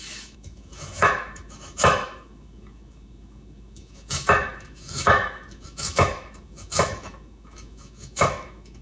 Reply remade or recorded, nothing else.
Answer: remade